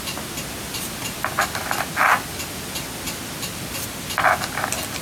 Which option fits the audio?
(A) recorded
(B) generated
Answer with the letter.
A